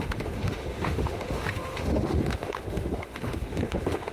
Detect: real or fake fake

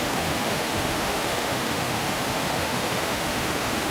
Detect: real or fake fake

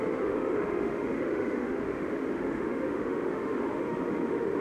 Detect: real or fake fake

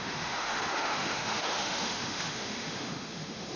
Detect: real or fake fake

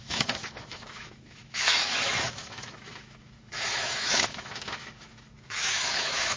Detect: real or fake fake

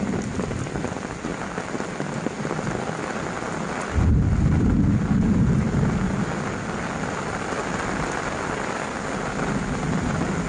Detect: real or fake real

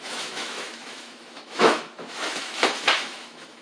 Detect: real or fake fake